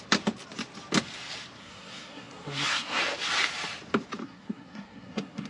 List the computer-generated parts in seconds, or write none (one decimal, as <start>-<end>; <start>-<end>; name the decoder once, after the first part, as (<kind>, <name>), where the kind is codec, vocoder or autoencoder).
1.6-3.0 (codec, SNAC); 4.2-5.5